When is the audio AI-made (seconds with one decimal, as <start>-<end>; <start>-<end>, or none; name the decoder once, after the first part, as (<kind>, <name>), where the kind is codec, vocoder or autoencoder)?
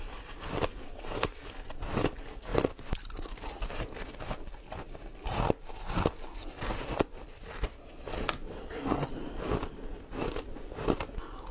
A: 8.6-9.1 (codec, SNAC)